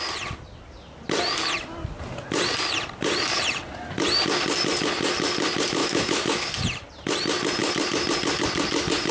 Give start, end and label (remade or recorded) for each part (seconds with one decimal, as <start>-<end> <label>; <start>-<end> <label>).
0.0-5.8 recorded; 5.8-6.5 remade; 6.5-9.1 recorded